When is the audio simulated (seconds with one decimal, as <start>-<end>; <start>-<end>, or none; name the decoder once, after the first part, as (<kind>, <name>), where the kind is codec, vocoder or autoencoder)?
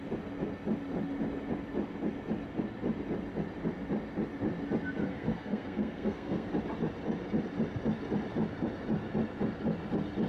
5.0-6.5 (codec, SNAC)